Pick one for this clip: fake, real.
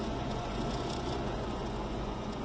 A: fake